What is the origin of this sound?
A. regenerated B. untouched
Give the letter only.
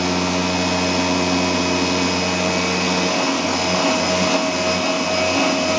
B